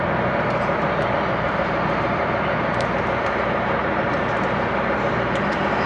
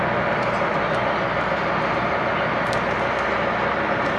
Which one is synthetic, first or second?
first